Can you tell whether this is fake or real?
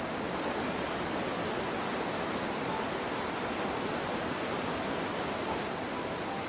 real